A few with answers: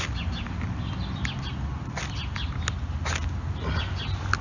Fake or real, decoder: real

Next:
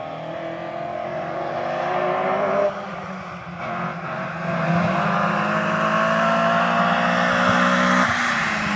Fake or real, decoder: real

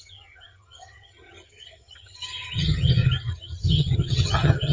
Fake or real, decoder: fake, vocoder, HiFi-GAN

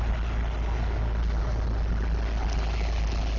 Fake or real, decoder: real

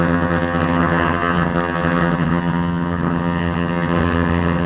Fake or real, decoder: fake, vocoder, HiFi-GAN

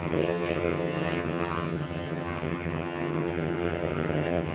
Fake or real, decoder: fake, vocoder, HiFi-GAN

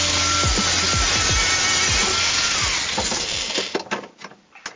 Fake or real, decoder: real